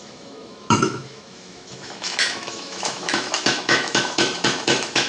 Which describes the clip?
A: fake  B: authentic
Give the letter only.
A